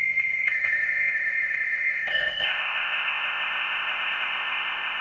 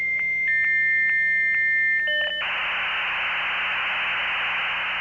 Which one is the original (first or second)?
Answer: second